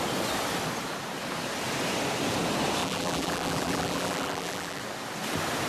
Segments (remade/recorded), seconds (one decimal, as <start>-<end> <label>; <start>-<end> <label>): 0.0-2.8 recorded; 2.8-4.8 remade; 4.8-5.7 recorded